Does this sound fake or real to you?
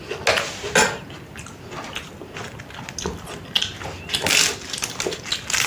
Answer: real